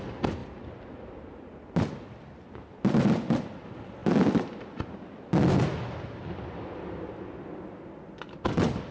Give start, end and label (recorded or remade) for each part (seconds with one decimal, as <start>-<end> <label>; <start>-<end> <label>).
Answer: 0.0-8.9 recorded